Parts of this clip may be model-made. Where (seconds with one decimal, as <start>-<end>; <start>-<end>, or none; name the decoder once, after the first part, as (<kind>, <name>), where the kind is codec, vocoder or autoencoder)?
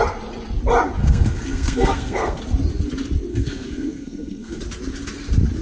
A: 1.0-2.4 (codec, SNAC); 3.3-4.6